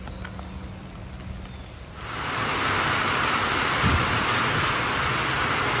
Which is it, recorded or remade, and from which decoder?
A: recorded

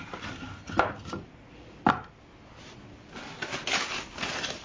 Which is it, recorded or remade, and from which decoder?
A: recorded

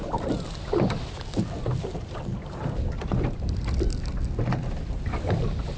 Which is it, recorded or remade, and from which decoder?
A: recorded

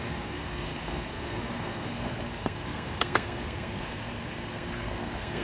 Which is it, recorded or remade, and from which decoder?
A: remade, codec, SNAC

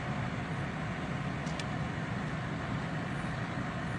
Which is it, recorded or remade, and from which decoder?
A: recorded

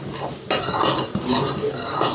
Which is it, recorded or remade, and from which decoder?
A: recorded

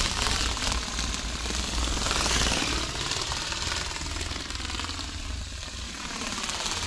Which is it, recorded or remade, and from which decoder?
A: recorded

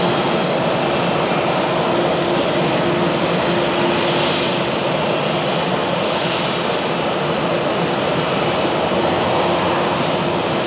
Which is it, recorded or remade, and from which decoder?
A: recorded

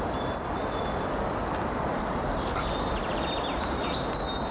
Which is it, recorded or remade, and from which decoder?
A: recorded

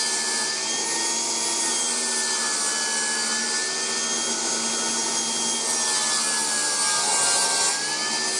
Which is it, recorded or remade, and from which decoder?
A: recorded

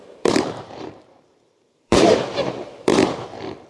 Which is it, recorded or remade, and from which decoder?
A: remade, vocoder, BigVGAN v2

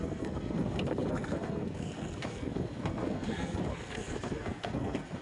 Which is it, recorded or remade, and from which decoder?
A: remade, codec, SNAC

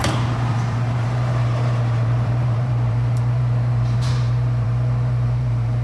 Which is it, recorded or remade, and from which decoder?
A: remade, vocoder, BigVGAN v2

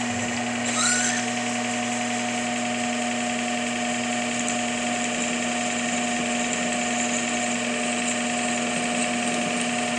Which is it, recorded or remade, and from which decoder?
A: recorded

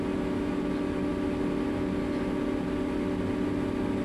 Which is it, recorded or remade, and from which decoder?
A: recorded